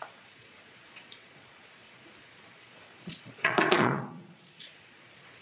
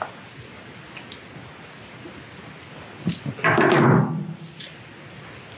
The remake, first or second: first